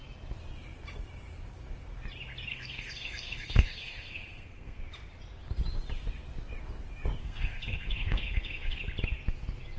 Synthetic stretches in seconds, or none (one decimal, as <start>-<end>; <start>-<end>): 2.5-4.8; 7.2-8.8